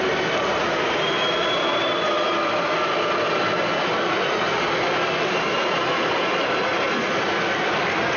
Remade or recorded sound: remade